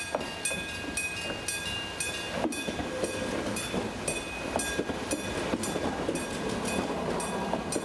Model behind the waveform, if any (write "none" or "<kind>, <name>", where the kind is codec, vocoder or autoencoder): none